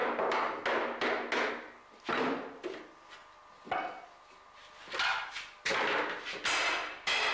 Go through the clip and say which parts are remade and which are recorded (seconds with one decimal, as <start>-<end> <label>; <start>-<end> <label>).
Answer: 0.0-7.3 recorded